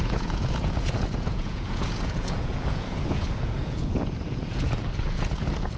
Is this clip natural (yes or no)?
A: no